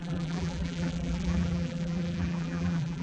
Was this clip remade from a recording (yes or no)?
yes